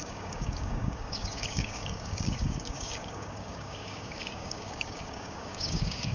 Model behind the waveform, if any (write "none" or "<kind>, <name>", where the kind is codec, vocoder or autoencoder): codec, DAC